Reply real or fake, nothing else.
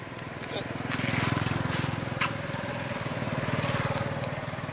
real